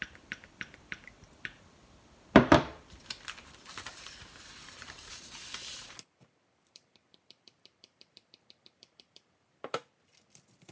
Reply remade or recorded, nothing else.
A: remade